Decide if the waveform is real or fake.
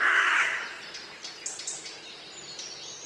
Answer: fake